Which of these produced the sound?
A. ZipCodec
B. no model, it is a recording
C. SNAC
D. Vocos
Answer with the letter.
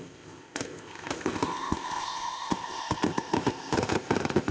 A